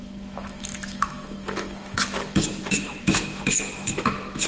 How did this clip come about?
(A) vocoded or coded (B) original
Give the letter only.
A